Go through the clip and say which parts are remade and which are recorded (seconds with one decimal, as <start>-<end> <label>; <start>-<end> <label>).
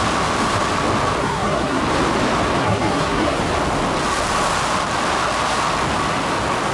0.0-1.2 recorded; 1.2-1.8 remade; 1.8-2.6 recorded; 2.6-3.4 remade; 3.4-6.7 recorded